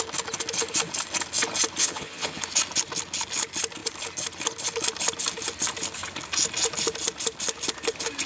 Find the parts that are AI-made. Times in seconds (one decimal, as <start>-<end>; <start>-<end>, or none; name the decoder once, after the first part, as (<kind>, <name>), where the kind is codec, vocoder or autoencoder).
1.8-2.4 (vocoder, HiFi-GAN)